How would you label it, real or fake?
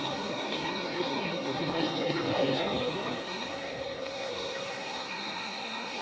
fake